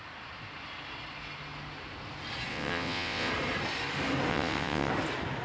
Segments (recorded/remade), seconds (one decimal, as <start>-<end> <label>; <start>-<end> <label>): 0.0-2.5 recorded; 2.5-3.3 remade; 3.3-4.3 recorded; 4.3-4.9 remade; 4.9-5.4 recorded